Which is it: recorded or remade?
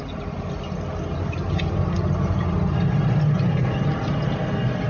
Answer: recorded